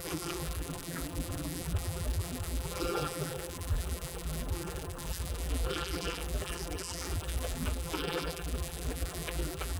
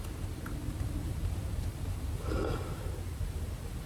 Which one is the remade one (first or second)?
first